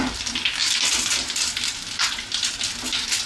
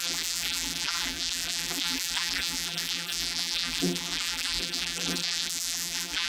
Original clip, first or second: first